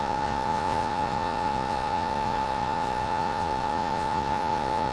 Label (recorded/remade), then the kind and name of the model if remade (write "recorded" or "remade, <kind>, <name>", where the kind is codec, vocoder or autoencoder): remade, vocoder, Vocos